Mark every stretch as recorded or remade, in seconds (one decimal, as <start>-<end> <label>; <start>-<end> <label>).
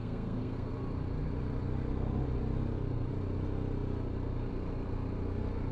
0.0-0.7 remade; 0.7-5.7 recorded